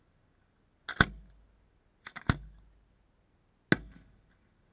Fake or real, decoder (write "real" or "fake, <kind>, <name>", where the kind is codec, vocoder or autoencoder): real